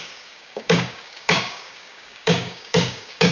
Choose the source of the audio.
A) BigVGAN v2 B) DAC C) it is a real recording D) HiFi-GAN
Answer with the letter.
B